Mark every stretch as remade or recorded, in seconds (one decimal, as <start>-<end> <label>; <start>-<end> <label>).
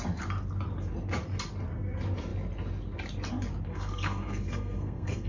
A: 0.0-3.7 recorded; 3.7-5.3 remade